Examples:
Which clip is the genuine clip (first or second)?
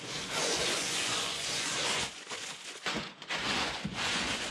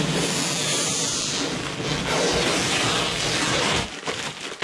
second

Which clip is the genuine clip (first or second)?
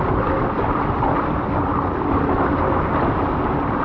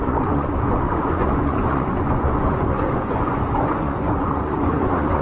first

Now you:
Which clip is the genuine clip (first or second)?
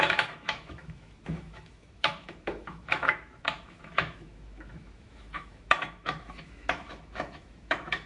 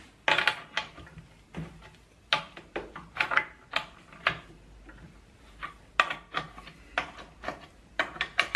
second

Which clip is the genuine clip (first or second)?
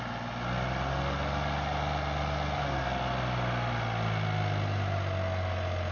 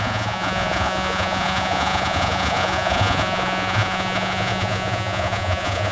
first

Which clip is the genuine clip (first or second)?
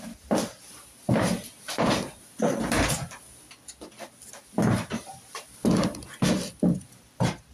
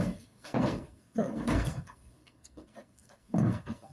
first